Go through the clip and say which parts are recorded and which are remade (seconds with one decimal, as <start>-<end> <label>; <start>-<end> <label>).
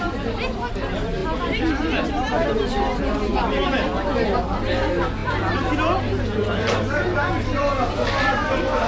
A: 0.0-8.9 recorded